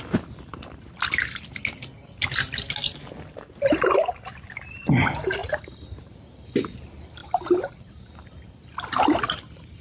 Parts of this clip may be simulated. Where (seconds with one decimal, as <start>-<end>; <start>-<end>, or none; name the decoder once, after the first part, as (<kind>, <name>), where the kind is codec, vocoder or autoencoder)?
5.4-6.6 (vocoder, BigVGAN v2); 7.2-8.1